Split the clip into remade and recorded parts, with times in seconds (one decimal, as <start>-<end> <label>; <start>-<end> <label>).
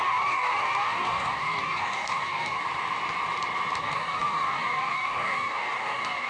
0.0-2.6 remade; 2.6-3.8 recorded; 3.8-6.3 remade